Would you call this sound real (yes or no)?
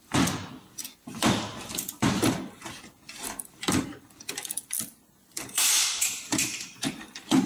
no